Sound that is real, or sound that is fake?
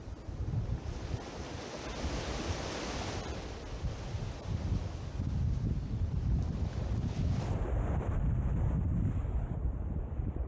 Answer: real